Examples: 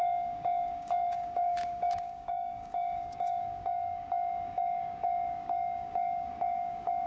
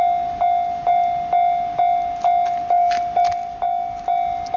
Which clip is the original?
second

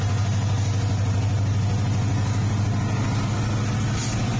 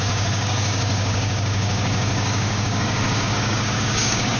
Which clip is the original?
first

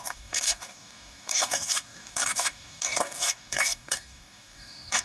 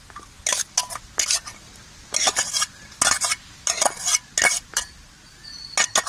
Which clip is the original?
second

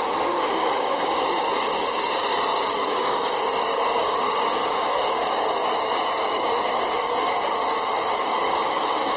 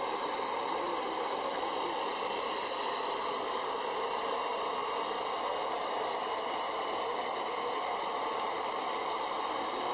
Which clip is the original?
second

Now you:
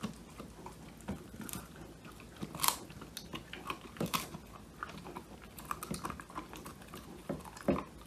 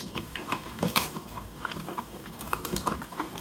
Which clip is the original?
first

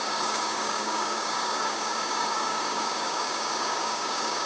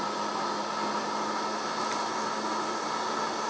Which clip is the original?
second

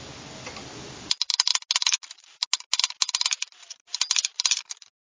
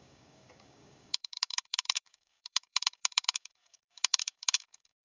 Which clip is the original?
first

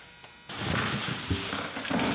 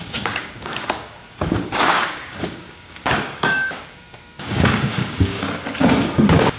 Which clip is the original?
first